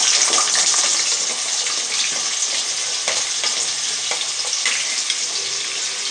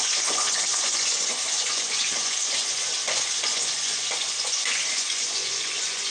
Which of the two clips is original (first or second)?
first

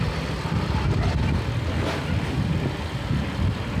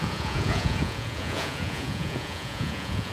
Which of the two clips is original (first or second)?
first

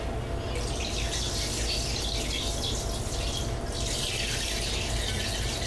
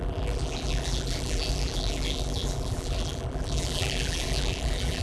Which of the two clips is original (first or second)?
first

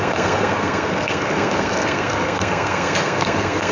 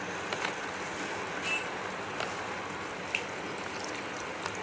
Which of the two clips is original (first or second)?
second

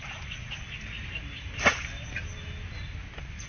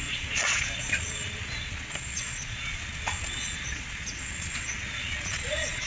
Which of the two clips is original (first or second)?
first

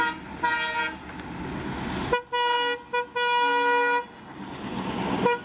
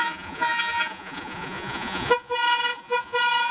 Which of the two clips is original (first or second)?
first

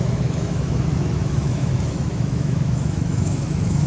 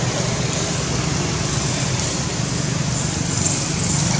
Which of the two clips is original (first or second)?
second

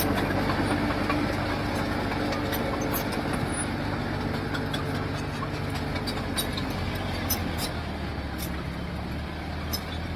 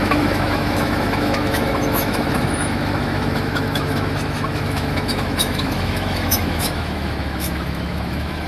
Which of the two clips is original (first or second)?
first